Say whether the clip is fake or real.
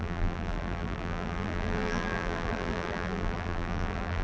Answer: fake